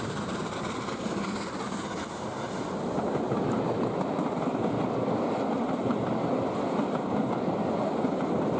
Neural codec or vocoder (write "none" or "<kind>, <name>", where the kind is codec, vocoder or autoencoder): vocoder, BigVGAN v2